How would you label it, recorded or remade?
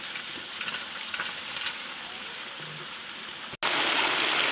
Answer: recorded